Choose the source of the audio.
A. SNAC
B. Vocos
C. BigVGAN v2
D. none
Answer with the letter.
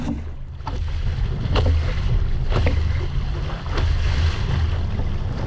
D